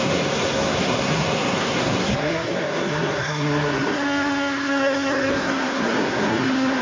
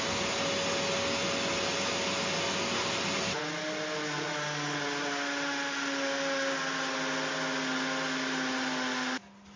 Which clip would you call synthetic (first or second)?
first